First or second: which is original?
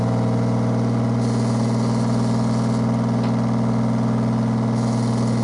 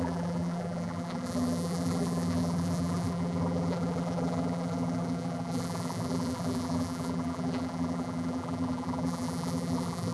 first